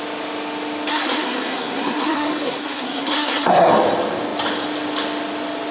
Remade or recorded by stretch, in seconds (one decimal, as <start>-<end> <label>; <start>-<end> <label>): 0.0-0.9 recorded; 0.9-3.7 remade; 3.7-5.7 recorded